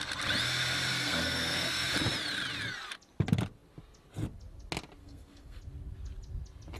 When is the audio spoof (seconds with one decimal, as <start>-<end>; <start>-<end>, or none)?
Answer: 0.9-1.9; 5.0-5.6